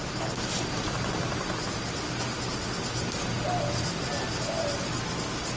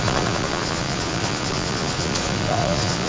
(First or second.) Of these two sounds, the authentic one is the first